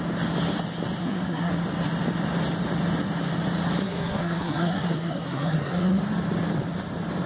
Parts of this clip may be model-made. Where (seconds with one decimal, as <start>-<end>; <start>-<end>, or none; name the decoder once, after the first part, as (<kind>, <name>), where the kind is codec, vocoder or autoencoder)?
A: 1.0-1.5 (codec, SNAC); 3.8-6.0